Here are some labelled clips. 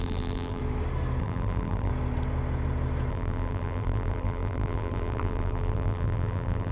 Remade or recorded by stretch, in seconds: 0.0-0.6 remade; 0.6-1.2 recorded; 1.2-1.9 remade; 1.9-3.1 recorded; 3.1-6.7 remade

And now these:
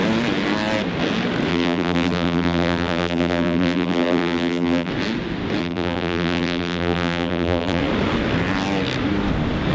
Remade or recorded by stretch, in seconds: 0.0-1.5 recorded; 1.5-4.9 remade; 4.9-5.6 recorded; 5.6-7.8 remade; 7.8-9.7 recorded

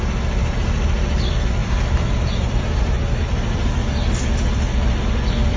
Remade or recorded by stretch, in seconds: 0.0-5.6 remade